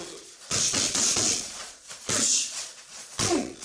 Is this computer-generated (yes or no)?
yes